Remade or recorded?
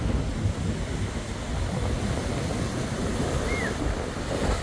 recorded